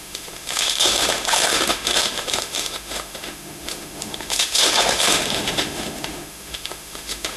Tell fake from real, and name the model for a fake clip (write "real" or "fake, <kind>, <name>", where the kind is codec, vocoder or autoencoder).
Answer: fake, autoencoder, DAC-VAE